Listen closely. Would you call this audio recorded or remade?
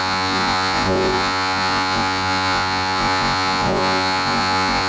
remade